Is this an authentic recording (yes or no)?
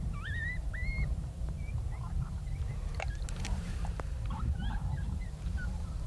no